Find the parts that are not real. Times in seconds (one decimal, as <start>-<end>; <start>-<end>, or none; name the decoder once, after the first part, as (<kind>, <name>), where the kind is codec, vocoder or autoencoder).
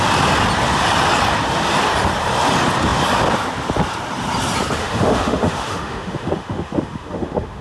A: 4.8-7.6 (autoencoder, DAC-VAE)